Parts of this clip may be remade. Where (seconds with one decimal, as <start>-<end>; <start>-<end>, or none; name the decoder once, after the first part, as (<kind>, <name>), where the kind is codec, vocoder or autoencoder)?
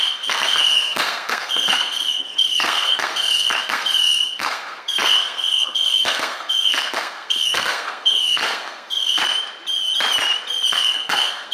0.0-9.2 (codec, SNAC); 10.7-11.5